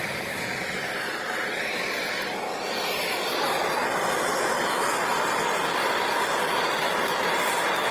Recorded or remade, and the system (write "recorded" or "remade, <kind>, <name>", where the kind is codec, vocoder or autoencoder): recorded